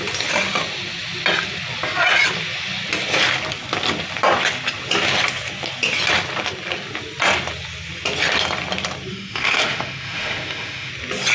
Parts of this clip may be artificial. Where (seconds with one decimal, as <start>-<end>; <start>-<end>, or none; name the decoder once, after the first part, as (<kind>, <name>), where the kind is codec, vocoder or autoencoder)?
9.1-10.9 (autoencoder, DAC-VAE)